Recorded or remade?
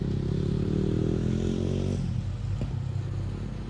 recorded